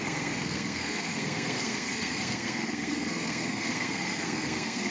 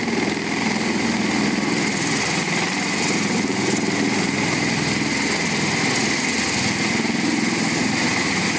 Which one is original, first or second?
second